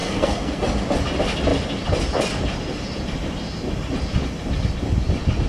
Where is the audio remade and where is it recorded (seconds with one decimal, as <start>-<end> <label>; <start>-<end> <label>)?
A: 0.0-0.6 remade; 0.6-5.5 recorded